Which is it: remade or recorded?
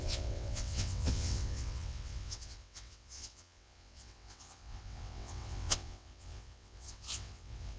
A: remade